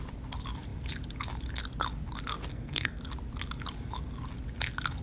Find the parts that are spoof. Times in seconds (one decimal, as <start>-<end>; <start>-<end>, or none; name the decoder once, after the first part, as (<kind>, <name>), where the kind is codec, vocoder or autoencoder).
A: 2.5-3.0 (codec, SNAC)